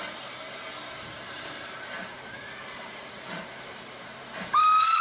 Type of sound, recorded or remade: remade